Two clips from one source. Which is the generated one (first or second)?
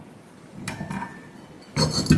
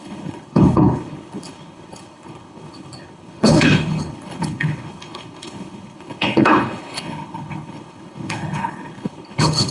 second